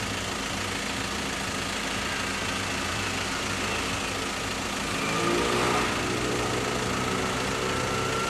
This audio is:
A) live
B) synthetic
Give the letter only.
A